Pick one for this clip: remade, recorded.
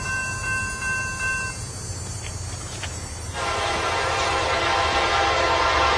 remade